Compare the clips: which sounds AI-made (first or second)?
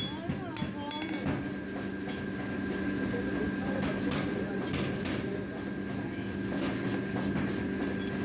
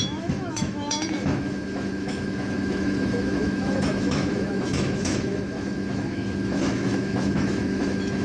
second